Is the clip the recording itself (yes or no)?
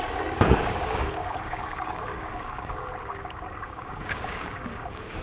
no